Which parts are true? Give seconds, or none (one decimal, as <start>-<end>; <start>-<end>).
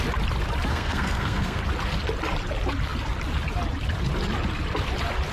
0.0-0.7; 1.6-5.3